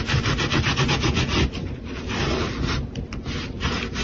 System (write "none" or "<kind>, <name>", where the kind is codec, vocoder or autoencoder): none